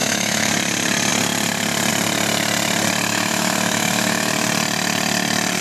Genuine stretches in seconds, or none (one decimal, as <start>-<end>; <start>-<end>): 0.5-3.1; 4.3-5.6